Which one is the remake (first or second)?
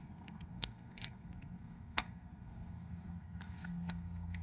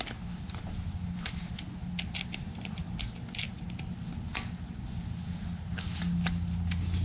first